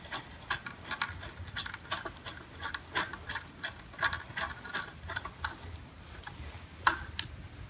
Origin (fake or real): real